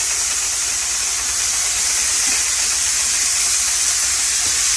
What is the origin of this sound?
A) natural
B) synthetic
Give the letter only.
A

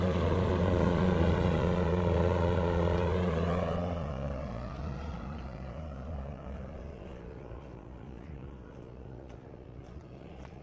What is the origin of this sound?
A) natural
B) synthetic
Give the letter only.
B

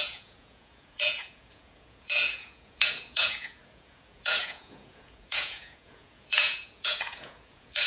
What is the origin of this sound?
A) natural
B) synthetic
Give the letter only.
B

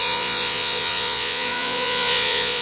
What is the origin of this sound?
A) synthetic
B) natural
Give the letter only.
A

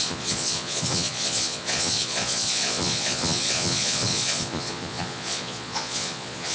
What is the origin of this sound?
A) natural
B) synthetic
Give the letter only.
B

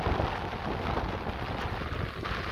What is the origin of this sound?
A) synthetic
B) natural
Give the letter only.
B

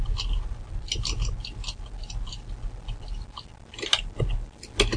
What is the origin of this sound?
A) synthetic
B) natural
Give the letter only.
B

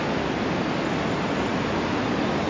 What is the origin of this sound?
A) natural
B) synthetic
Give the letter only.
A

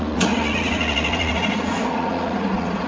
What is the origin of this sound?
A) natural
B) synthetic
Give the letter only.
B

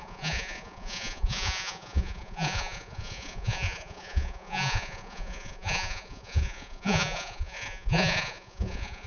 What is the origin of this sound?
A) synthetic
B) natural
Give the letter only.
A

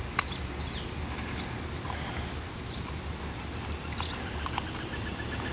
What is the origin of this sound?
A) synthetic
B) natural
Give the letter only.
B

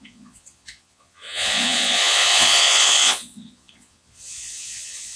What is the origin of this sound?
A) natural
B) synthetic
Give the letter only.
B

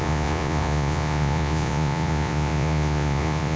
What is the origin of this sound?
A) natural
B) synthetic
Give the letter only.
B